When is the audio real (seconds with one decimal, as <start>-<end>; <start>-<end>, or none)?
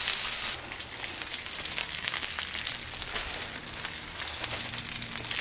0.0-1.8; 2.3-5.4